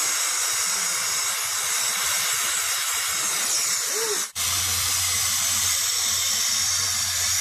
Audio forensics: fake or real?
fake